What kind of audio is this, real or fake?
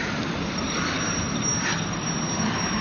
real